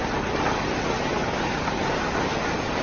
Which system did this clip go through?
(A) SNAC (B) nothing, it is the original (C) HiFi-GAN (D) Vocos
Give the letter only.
B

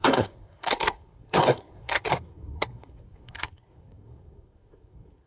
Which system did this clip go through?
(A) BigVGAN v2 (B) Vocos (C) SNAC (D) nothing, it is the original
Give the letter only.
C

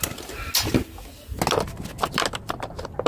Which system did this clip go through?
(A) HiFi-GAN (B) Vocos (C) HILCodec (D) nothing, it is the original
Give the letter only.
D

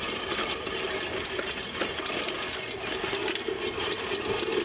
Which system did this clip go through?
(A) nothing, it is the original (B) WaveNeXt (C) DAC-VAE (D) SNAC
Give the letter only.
A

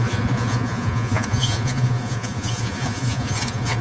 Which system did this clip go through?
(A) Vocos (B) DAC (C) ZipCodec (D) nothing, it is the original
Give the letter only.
A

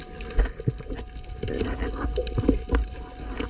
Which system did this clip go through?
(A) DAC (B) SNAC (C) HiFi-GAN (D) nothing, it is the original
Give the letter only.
D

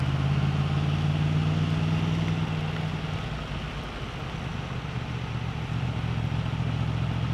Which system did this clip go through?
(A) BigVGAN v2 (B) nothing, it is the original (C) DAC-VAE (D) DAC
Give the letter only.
B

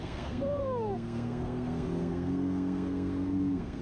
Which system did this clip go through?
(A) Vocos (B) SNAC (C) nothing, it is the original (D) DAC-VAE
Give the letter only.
B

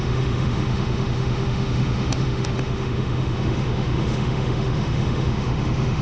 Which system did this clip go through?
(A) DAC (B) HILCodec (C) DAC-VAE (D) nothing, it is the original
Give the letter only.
C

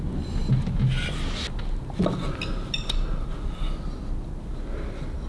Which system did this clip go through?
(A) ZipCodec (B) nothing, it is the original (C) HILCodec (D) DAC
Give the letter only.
B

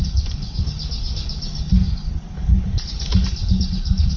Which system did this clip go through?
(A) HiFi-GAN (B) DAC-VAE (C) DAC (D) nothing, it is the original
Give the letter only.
C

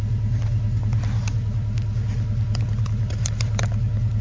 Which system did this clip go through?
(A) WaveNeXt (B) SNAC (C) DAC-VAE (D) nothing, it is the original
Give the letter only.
D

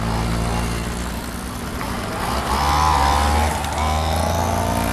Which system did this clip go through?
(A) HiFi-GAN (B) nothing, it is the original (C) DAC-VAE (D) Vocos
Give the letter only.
B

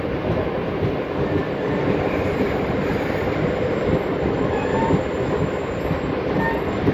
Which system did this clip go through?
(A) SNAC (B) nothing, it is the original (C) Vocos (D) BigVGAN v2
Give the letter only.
B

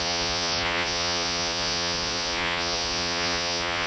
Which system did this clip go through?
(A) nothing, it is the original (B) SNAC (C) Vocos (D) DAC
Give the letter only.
C